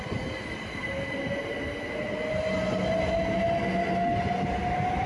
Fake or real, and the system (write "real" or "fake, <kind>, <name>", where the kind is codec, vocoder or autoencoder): real